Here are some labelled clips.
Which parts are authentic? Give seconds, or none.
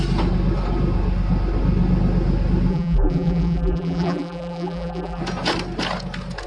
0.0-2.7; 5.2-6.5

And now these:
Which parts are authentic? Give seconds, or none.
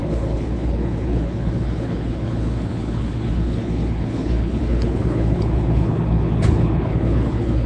none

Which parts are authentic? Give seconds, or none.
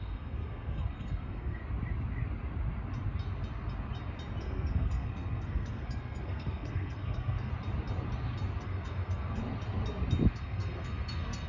1.6-4.4; 7.5-8.6; 9.4-10.4